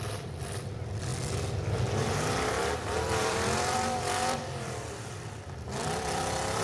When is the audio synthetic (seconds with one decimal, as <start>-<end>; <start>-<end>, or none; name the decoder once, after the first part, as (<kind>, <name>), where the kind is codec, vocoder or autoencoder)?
0.0-1.1 (vocoder, BigVGAN v2); 2.0-6.6